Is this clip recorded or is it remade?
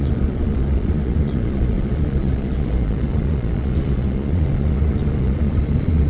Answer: remade